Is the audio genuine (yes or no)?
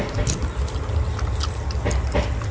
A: yes